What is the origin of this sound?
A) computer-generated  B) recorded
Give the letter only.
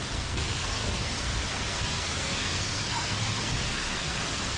A